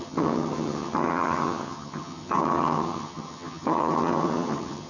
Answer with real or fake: fake